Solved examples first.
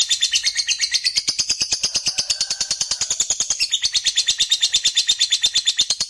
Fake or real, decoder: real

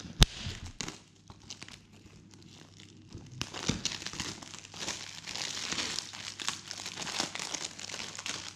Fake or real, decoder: real